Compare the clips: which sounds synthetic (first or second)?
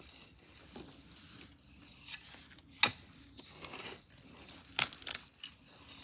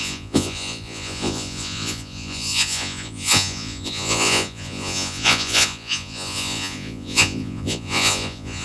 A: second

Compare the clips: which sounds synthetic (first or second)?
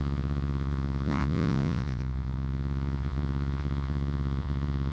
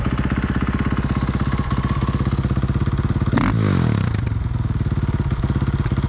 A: first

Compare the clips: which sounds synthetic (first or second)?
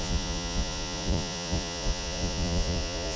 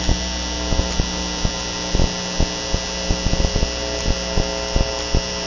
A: first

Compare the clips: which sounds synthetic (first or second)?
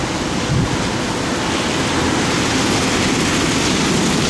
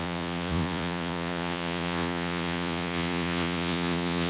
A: second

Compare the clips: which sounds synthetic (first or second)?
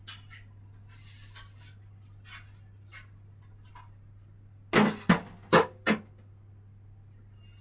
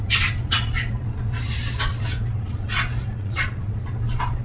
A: second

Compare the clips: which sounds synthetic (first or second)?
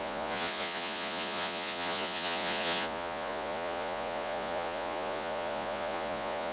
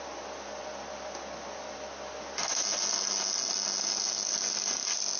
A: first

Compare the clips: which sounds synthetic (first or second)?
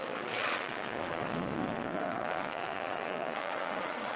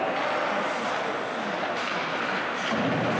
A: first